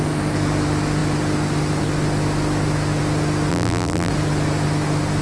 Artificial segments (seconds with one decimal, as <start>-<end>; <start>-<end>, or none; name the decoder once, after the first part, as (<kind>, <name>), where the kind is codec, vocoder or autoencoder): 3.5-4.1 (vocoder, BigVGAN v2)